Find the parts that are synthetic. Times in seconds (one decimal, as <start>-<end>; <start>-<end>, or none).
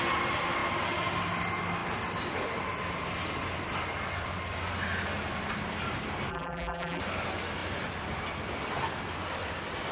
6.3-7.0